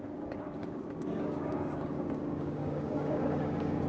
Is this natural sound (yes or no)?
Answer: no